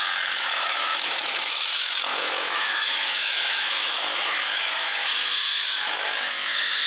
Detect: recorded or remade remade